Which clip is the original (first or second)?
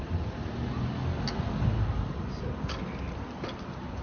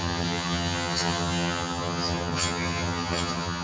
first